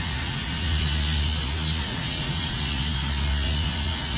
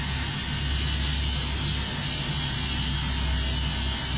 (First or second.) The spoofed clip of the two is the first